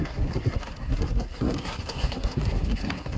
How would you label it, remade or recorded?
remade